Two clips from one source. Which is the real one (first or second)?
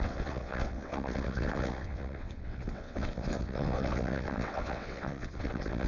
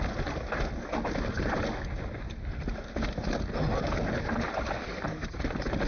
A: second